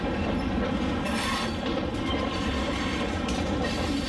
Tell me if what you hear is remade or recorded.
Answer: recorded